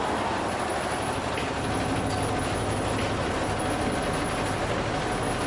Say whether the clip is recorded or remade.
recorded